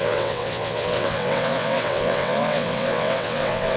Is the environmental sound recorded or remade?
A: remade